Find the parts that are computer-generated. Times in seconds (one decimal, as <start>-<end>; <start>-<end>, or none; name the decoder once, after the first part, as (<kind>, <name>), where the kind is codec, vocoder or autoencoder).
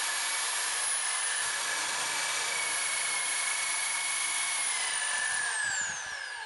none